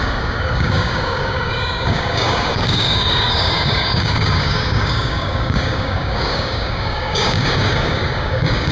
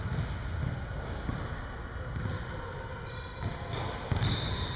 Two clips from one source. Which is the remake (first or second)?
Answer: first